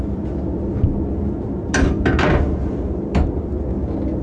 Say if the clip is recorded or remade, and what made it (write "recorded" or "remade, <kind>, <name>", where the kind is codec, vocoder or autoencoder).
recorded